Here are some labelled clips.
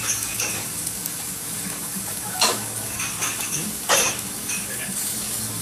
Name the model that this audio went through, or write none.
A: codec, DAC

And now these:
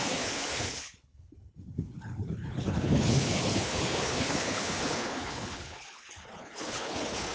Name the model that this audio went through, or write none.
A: codec, HILCodec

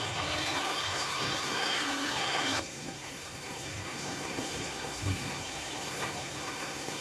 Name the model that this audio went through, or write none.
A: codec, SNAC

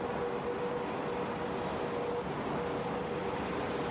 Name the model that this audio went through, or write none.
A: none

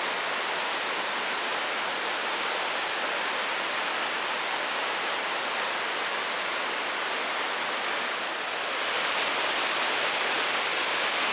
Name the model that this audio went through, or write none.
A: none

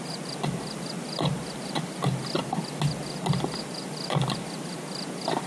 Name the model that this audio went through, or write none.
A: none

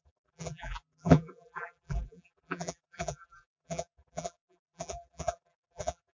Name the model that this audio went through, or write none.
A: vocoder, BigVGAN v2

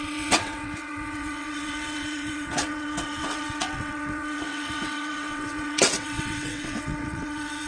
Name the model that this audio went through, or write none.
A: vocoder, WaveNeXt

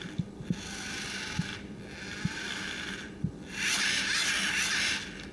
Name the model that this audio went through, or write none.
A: none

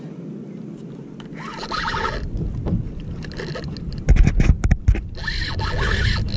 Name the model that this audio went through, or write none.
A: none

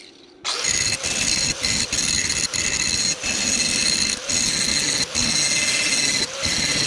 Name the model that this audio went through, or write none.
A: none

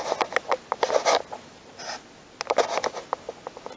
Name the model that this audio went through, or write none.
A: none